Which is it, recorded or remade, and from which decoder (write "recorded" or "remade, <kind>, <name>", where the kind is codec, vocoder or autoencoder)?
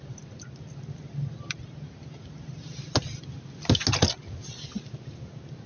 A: recorded